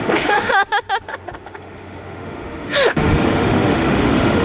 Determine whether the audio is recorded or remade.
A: remade